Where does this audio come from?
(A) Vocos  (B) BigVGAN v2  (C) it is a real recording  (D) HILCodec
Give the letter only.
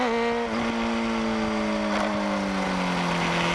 C